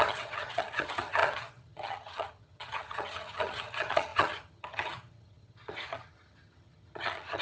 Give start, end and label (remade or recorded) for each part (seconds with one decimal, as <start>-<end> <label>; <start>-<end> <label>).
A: 0.0-7.4 remade